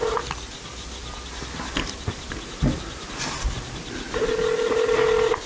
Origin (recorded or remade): recorded